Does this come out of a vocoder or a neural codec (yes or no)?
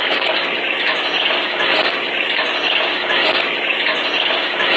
yes